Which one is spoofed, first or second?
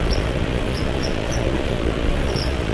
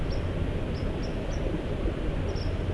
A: first